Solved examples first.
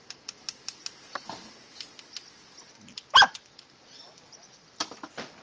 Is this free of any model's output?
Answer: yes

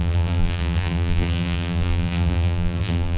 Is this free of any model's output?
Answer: no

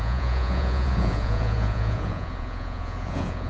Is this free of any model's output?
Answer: no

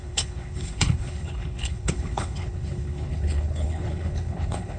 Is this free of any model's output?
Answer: no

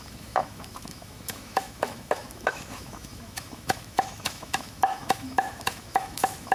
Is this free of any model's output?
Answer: no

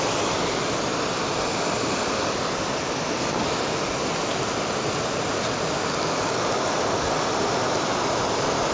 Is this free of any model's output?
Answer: yes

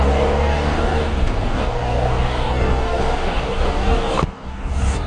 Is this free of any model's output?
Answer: no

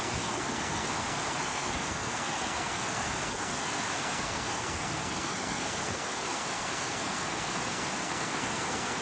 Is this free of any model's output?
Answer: no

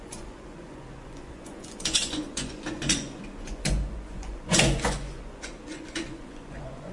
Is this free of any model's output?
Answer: no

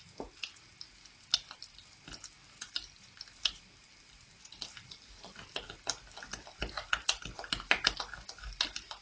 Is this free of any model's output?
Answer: yes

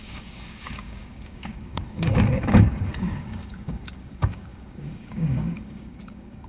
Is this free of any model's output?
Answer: no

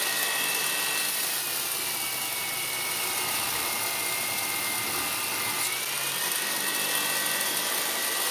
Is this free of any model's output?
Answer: yes